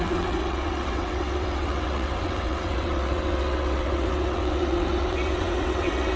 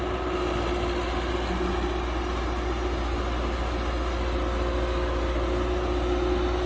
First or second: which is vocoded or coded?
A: first